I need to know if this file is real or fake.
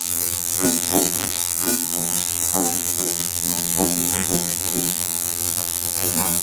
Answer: fake